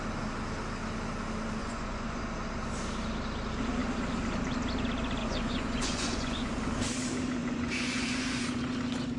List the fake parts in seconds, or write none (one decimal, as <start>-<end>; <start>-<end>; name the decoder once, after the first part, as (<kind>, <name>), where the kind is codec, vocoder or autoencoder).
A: 1.6-2.2 (vocoder, Vocos); 5.2-6.5; 7.4-8.6